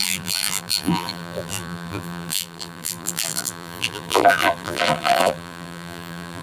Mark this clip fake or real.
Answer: fake